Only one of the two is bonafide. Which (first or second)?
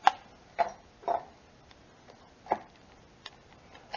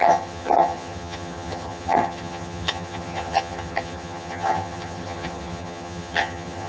first